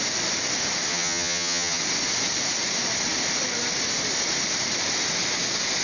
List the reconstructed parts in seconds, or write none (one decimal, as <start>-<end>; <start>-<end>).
0.9-1.8

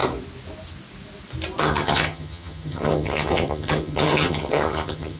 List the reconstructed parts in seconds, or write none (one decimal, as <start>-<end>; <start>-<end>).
1.6-5.2

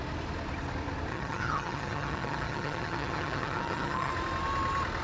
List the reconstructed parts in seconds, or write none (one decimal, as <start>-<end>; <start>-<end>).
1.1-4.1

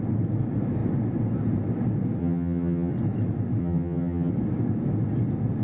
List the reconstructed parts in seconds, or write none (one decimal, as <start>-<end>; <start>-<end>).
2.2-2.9; 3.6-4.3

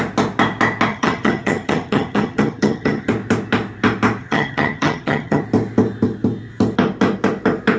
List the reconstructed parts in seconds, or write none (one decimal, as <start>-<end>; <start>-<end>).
0.9-3.1; 4.2-5.4

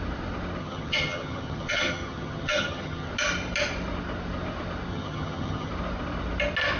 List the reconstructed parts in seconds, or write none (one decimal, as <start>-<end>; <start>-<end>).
0.6-3.1; 4.9-5.7